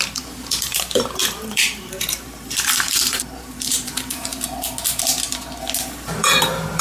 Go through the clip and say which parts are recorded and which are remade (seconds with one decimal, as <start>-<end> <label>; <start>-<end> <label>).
0.0-4.3 remade; 4.3-6.1 recorded; 6.1-6.8 remade